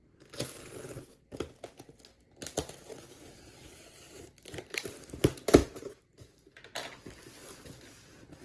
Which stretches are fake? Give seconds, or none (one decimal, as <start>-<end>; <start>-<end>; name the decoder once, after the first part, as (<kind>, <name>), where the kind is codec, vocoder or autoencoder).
5.6-6.6 (vocoder, BigVGAN v2)